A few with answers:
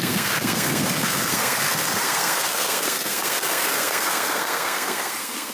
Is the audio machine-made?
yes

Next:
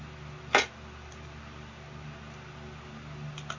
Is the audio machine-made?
no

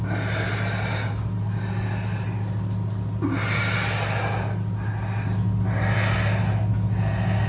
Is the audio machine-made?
no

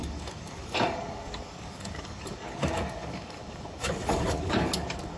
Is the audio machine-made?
yes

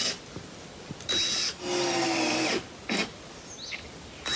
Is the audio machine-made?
no